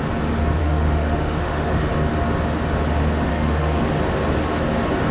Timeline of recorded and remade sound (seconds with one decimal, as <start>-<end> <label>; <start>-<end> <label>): 0.0-0.6 recorded; 0.6-1.9 remade; 1.9-3.3 recorded; 3.3-3.8 remade; 3.8-5.1 recorded